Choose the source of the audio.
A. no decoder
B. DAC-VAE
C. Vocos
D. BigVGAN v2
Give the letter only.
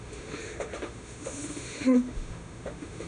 B